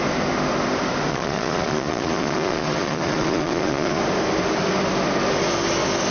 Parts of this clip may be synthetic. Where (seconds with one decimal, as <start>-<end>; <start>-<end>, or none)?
1.1-4.0